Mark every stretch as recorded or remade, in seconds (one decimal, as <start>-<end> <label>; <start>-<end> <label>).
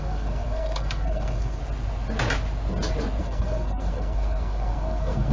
0.0-1.6 remade; 1.6-3.2 recorded; 3.2-5.3 remade